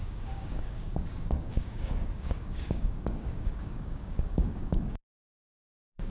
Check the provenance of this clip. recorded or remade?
remade